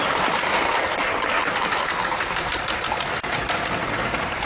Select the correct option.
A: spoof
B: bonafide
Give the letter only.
B